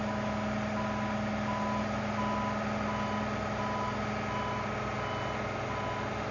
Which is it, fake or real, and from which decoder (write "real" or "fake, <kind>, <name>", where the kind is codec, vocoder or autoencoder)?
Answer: real